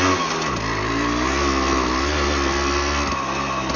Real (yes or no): yes